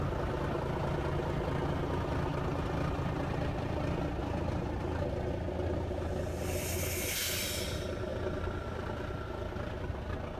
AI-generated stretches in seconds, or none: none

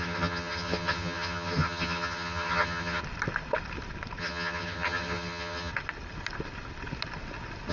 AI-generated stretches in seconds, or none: 0.0-3.0 (vocoder, HiFi-GAN); 4.2-5.7

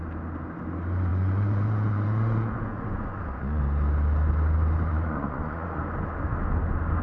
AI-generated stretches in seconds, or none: 1.1-3.6 (vocoder, Vocos); 4.9-5.8